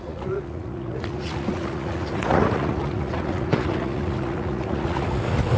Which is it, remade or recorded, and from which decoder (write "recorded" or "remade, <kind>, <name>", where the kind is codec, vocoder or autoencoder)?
remade, vocoder, Vocos